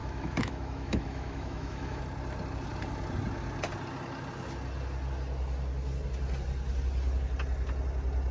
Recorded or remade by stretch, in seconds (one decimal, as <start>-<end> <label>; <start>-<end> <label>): 0.0-2.0 remade; 2.0-8.3 recorded